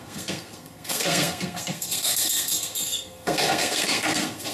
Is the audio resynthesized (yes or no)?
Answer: yes